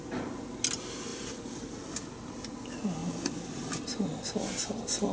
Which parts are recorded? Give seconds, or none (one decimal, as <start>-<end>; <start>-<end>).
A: 0.0-5.1

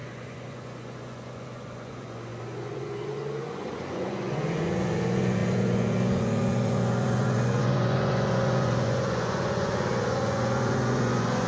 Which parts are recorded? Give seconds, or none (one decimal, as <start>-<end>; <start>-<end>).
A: none

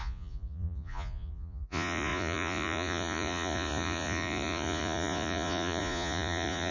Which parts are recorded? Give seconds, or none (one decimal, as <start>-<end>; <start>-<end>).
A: none

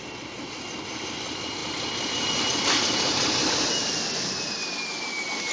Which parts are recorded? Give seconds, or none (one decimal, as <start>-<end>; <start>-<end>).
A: 0.0-5.5

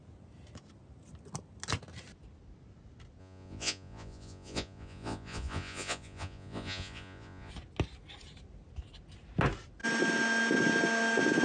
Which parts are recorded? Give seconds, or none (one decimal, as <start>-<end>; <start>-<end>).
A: 0.0-3.2; 7.5-11.4

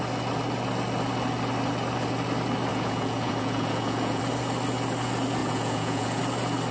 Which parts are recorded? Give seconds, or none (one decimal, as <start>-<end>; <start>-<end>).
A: 0.0-2.7; 4.2-5.4; 6.2-6.7